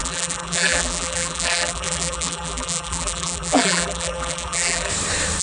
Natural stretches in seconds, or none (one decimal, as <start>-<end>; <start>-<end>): 4.9-5.4